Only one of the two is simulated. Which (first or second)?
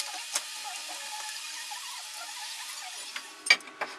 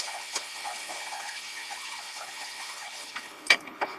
second